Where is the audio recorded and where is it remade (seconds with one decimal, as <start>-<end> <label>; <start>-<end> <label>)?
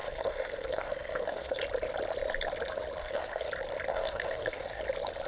0.0-1.6 remade; 1.6-3.0 recorded; 3.0-3.5 remade; 3.5-3.9 recorded; 3.9-4.8 remade; 4.8-5.3 recorded